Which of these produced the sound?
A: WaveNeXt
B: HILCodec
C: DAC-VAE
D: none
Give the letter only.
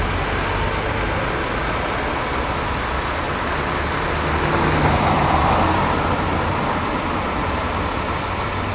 D